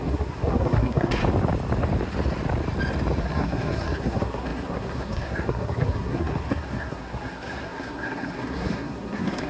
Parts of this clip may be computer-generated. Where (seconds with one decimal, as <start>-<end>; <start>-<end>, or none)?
0.0-1.2; 3.2-9.5